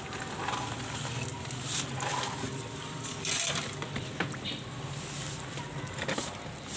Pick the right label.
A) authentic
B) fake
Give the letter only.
A